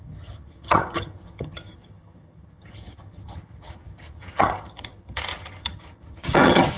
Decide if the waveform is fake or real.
fake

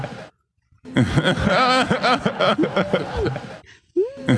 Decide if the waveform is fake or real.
real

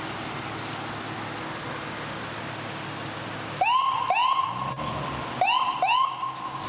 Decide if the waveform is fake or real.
real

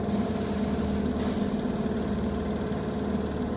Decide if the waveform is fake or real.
real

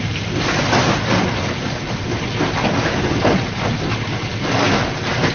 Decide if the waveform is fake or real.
real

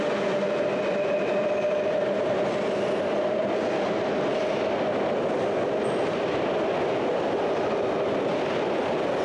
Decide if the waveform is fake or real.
real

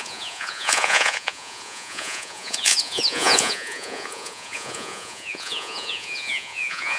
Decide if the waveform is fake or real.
fake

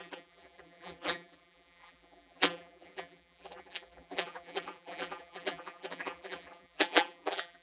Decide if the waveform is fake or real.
fake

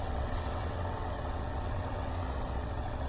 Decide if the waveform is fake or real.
fake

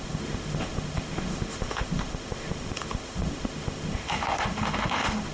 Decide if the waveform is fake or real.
fake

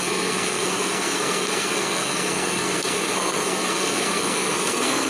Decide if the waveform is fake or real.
fake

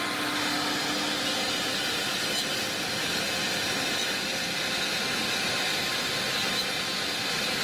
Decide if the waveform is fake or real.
real